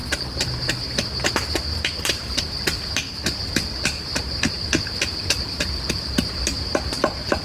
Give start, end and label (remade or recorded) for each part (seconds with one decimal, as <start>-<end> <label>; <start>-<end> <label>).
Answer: 0.0-2.0 recorded; 2.0-4.1 remade; 4.1-4.9 recorded; 4.9-7.4 remade